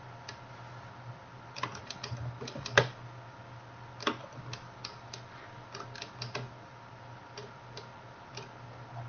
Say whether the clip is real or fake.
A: real